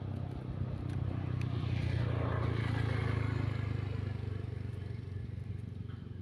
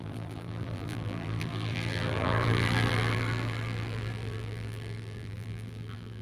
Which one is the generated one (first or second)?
second